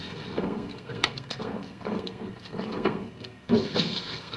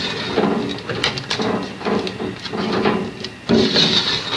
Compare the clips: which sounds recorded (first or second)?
second